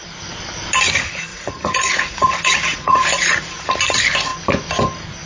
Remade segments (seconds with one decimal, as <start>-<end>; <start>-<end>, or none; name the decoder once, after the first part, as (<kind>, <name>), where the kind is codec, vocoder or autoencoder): 1.3-3.7 (vocoder, Vocos)